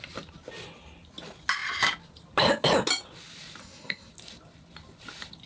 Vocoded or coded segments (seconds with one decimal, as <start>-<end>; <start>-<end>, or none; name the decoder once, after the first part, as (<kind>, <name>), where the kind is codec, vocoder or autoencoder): 3.6-4.1 (codec, SNAC)